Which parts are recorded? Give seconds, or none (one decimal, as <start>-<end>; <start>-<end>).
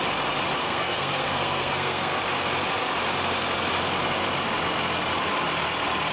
0.0-0.6; 2.2-6.1